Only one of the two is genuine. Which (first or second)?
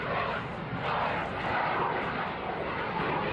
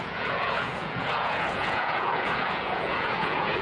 first